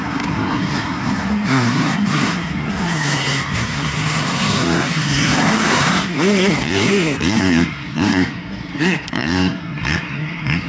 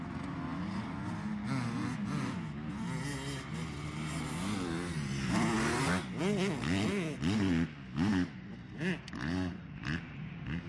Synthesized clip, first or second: first